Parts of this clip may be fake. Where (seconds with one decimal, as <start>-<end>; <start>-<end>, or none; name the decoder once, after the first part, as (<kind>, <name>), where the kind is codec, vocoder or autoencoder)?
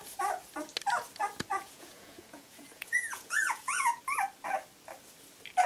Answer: 1.5-4.0 (vocoder, Vocos)